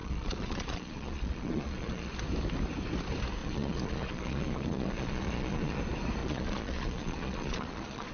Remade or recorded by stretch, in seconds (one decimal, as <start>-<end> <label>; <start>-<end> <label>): 0.0-2.1 remade; 2.1-3.4 recorded; 3.4-5.8 remade; 5.8-6.2 recorded; 6.2-8.1 remade